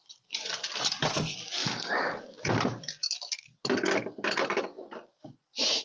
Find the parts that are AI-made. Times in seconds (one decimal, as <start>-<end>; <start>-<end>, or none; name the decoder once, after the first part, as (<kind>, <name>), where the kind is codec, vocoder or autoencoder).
0.0-0.7 (vocoder, BigVGAN v2); 1.6-2.9